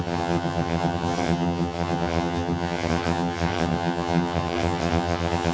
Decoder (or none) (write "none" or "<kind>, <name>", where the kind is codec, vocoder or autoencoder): vocoder, HiFi-GAN